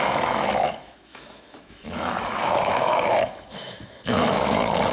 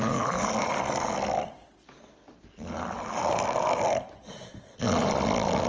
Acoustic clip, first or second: second